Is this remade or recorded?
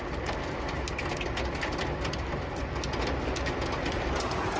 recorded